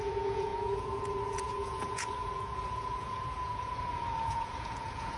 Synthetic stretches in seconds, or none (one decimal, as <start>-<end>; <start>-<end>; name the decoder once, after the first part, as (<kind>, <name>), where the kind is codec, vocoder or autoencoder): 0.0-5.2 (vocoder, Vocos)